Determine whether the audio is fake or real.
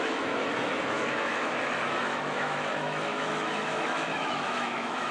fake